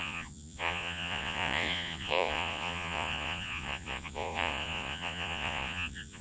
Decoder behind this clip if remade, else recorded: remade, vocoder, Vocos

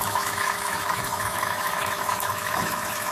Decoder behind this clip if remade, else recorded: remade, autoencoder, DAC-VAE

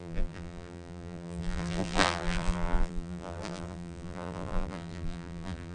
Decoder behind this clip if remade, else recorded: remade, vocoder, BigVGAN v2